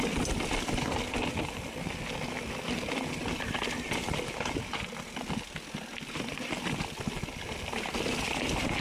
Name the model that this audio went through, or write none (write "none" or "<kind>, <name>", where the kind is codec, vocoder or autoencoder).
none